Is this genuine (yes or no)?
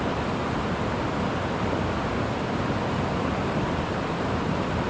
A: yes